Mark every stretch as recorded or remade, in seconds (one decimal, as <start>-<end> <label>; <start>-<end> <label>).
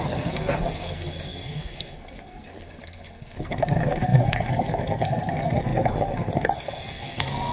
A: 0.0-7.5 remade